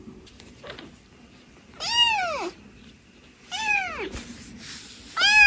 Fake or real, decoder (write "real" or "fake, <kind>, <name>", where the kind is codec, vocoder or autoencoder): real